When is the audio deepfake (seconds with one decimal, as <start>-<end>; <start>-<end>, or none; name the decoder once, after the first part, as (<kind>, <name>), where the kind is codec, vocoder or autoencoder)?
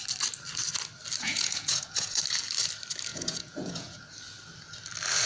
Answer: 1.2-2.2 (vocoder, Vocos); 3.1-4.0